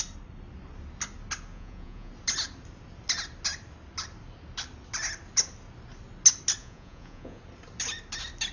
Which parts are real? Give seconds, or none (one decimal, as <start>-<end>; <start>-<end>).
0.0-1.5; 2.1-6.6; 7.4-8.5